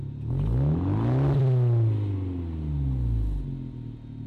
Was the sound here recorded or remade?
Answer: recorded